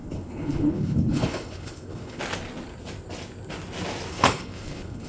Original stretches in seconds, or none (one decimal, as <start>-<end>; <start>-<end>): 2.2-4.1